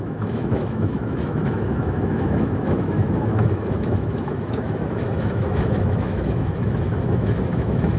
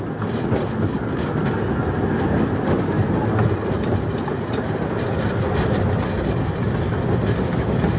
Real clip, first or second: second